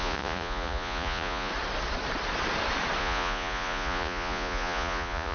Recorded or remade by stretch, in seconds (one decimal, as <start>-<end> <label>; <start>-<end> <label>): 0.0-1.5 remade; 1.5-3.0 recorded; 3.0-5.3 remade